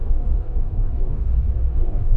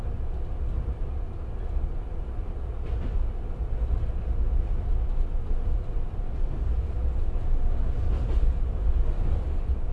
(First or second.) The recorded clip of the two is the second